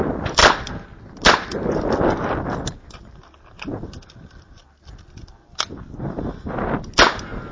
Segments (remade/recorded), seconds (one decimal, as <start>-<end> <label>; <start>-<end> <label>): 0.0-7.5 recorded